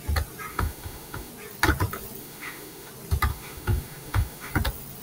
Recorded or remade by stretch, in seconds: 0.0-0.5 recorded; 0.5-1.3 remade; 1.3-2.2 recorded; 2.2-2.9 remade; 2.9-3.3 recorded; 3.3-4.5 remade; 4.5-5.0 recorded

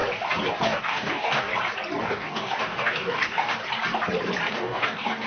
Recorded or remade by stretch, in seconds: 0.0-0.6 recorded; 0.6-1.5 remade; 1.5-2.0 recorded; 2.0-3.6 remade; 3.6-4.5 recorded; 4.5-5.3 remade

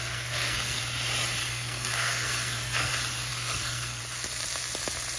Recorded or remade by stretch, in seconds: 0.0-0.8 remade; 0.8-1.4 recorded; 1.4-2.9 remade; 2.9-3.3 recorded; 3.3-4.0 remade; 4.0-5.2 recorded

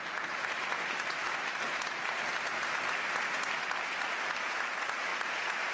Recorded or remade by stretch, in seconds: 0.0-5.7 recorded

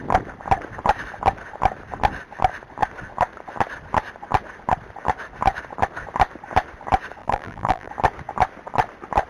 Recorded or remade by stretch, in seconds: 0.0-7.2 recorded; 7.2-7.9 remade; 7.9-9.3 recorded

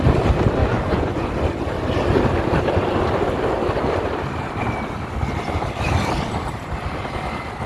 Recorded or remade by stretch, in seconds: 0.0-0.6 recorded; 0.6-1.3 remade; 1.3-7.7 recorded

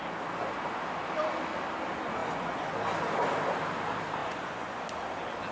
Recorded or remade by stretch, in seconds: 0.0-2.2 recorded; 2.2-2.7 remade; 2.7-4.2 recorded; 4.2-4.8 remade; 4.8-5.5 recorded